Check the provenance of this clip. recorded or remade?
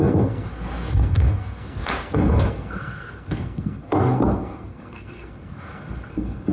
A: remade